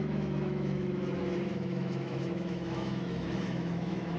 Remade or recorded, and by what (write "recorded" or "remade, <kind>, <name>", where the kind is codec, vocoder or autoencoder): remade, autoencoder, DAC-VAE